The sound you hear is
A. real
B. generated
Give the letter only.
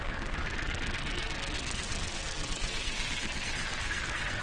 B